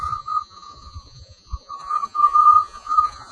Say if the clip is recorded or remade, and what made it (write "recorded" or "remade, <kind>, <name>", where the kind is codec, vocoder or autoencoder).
remade, vocoder, Vocos